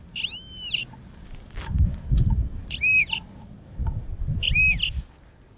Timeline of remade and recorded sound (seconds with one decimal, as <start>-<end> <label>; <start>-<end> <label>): 0.0-2.5 recorded; 2.5-4.5 remade; 4.5-5.6 recorded